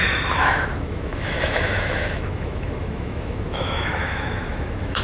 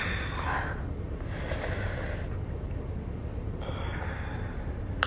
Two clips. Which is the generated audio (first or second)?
first